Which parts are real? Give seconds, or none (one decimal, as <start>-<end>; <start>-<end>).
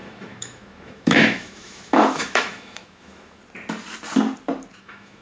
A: 3.4-4.8